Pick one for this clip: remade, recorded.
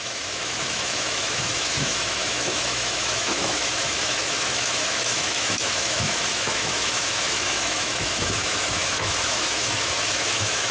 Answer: remade